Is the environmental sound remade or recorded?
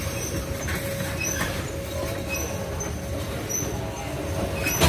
recorded